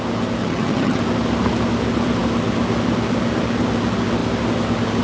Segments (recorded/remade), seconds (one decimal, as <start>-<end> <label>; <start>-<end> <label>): 0.0-0.4 recorded; 0.4-1.0 remade; 1.0-5.0 recorded